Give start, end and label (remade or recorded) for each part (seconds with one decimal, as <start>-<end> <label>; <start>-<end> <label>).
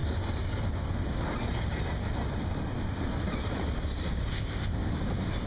0.0-4.3 recorded; 4.3-4.9 remade; 4.9-5.5 recorded